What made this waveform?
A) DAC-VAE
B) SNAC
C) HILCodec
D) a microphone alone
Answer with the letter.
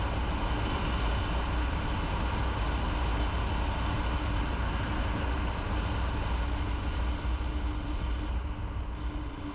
D